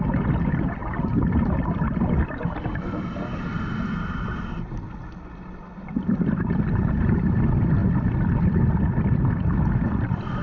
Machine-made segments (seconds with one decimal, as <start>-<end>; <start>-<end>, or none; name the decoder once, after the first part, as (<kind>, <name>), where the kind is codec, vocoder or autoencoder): none